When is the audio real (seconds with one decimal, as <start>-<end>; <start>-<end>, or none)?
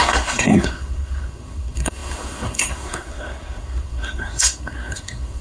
none